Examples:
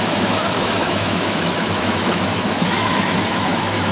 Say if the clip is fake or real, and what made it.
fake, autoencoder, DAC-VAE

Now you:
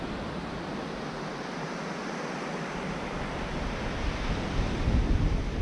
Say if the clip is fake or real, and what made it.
real